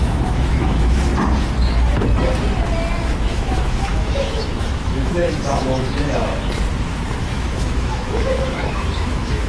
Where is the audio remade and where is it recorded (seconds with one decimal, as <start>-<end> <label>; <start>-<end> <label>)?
0.0-1.1 remade; 1.1-3.2 recorded; 3.2-6.3 remade; 6.3-7.2 recorded; 7.2-9.5 remade